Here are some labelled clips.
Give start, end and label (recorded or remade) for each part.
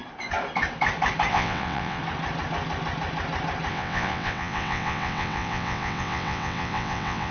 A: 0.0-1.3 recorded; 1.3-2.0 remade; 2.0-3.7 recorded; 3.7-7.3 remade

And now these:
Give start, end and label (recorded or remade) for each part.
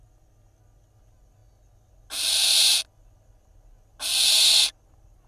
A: 0.0-5.3 recorded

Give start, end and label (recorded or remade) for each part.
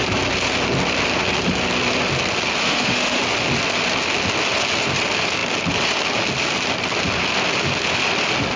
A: 0.0-2.6 recorded; 2.6-3.2 remade; 3.2-8.6 recorded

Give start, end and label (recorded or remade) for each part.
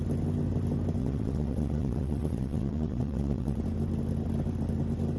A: 0.0-1.0 recorded; 1.0-3.6 remade; 3.6-5.2 recorded